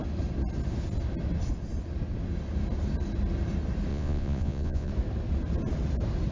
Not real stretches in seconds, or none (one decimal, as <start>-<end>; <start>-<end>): 3.9-4.9